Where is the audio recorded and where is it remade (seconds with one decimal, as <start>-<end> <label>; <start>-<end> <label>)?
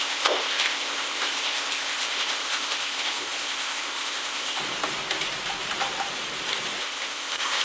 0.0-4.6 remade; 4.6-6.8 recorded; 6.8-7.6 remade